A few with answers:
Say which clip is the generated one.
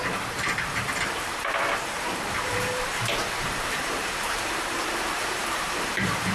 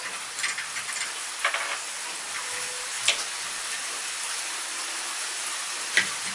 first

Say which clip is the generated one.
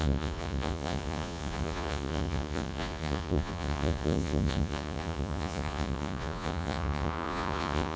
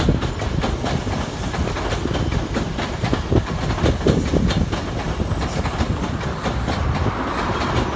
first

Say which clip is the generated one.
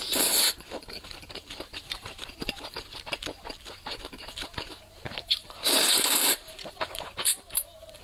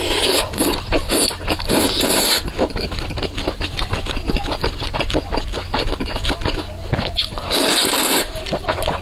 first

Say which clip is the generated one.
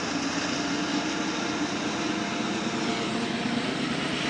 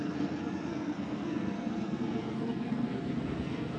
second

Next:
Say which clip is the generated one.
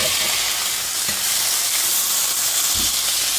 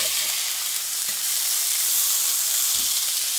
second